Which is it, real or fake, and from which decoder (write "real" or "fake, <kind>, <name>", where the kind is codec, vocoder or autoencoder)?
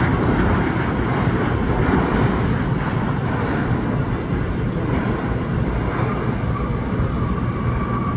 real